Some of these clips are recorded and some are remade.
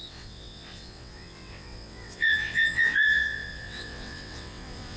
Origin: remade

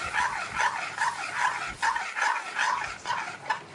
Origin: recorded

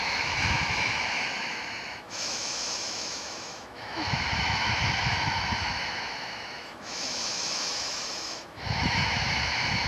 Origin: remade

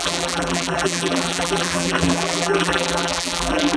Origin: remade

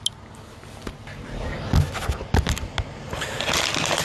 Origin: recorded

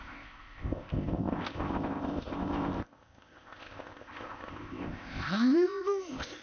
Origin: remade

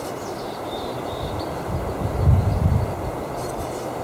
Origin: recorded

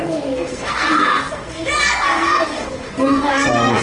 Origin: remade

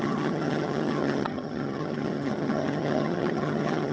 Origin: remade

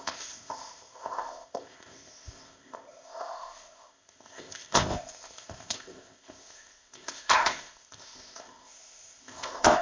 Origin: remade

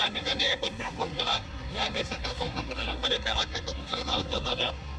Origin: remade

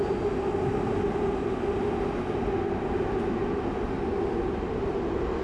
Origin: recorded